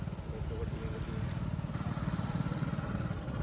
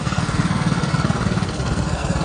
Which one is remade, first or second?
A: second